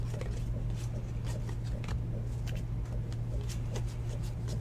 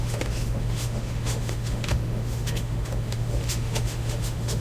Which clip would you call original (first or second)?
first